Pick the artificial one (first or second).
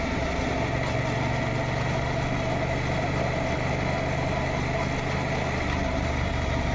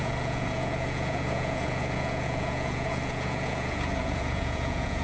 second